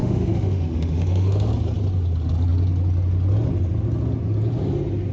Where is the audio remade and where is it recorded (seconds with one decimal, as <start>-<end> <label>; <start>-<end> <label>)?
0.0-1.5 remade; 1.5-5.1 recorded